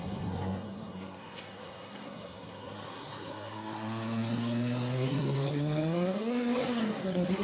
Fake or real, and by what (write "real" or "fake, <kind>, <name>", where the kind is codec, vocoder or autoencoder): fake, codec, SNAC